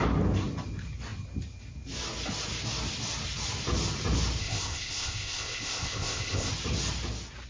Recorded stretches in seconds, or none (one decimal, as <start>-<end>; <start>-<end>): 0.0-4.4; 6.5-7.5